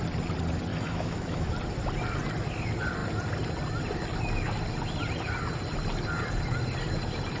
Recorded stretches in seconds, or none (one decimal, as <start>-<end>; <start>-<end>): 0.0-0.7; 1.5-7.4